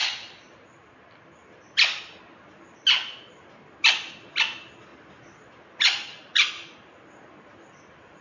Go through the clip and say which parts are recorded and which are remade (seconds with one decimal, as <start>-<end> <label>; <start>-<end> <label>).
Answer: 0.0-8.2 recorded